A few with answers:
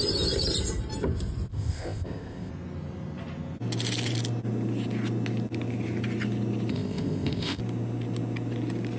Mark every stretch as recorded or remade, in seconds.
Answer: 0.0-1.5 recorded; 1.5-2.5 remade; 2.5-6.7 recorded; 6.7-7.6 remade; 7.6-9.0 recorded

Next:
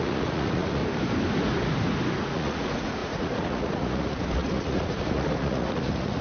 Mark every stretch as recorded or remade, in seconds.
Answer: 0.0-0.8 remade; 0.8-2.2 recorded; 2.2-6.2 remade

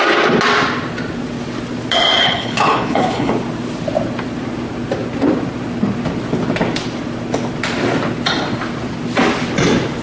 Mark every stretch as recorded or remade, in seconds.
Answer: 0.0-2.2 recorded; 2.2-3.3 remade; 3.3-10.0 recorded